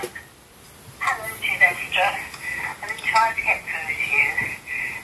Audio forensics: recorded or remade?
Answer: recorded